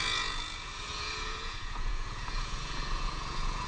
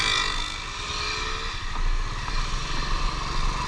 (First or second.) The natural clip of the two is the second